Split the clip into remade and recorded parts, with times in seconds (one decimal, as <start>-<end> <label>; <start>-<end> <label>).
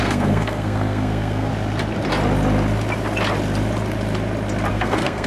0.0-1.5 remade; 1.5-4.7 recorded; 4.7-5.3 remade